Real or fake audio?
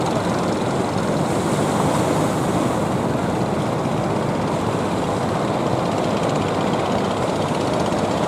real